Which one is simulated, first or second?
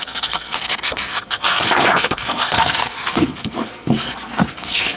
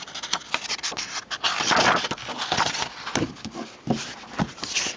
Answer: first